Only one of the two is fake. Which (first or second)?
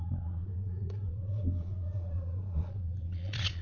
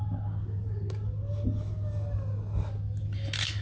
first